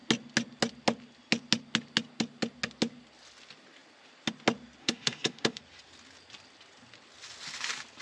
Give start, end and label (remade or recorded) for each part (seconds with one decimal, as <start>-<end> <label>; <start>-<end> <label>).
0.0-4.8 recorded; 4.8-5.6 remade; 5.6-8.0 recorded